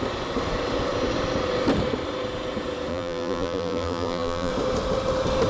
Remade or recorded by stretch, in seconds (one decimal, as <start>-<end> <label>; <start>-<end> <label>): 0.0-2.9 recorded; 2.9-4.5 remade; 4.5-5.5 recorded